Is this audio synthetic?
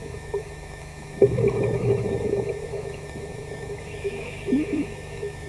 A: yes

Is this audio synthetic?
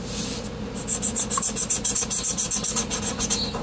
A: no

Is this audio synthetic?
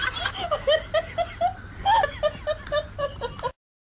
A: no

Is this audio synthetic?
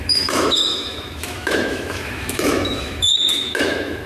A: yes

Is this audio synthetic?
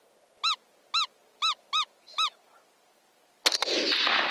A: no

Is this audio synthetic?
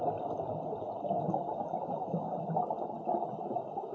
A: no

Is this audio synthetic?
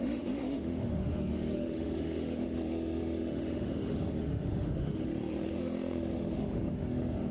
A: yes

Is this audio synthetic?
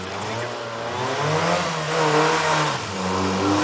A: no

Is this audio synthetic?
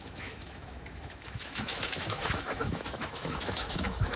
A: yes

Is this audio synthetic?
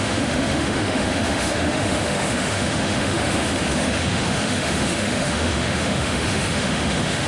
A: yes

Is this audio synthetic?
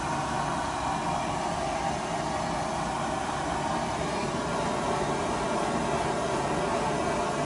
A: no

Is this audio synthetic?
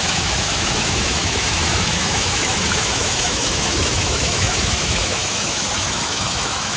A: yes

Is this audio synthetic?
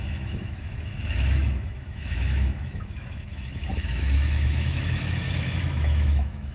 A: yes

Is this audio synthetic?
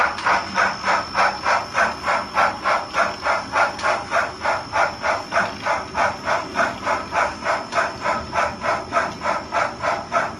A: no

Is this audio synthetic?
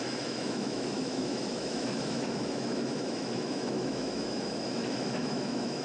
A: yes